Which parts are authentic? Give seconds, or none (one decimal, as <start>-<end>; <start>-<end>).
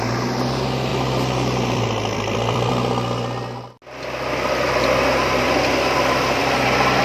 0.0-0.9; 2.7-7.0